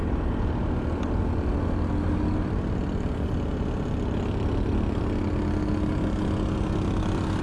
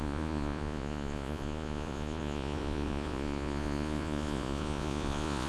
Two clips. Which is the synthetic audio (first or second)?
second